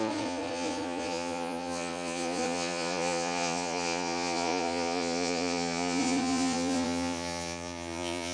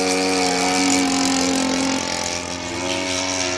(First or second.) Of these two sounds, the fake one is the first